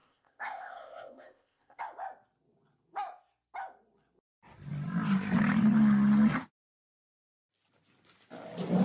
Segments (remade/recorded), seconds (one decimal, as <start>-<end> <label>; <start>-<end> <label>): 0.0-1.8 remade; 1.8-8.8 recorded